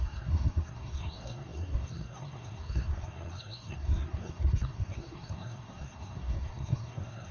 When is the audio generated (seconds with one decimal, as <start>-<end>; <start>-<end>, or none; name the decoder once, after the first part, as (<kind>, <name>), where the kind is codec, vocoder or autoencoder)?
0.0-7.3 (codec, SNAC)